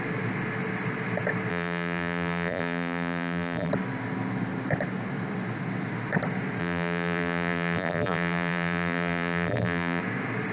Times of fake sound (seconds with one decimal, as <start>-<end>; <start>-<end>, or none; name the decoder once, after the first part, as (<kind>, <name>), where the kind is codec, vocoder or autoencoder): 1.5-3.7 (vocoder, BigVGAN v2); 6.6-10.0